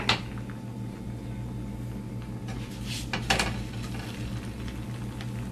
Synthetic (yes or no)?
no